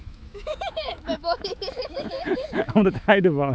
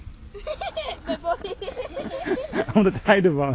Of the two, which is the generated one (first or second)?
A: first